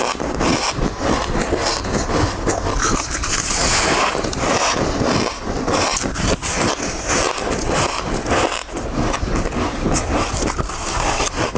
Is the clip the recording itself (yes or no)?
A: yes